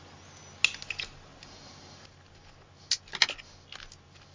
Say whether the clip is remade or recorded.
recorded